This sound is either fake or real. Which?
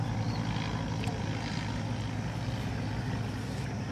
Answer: real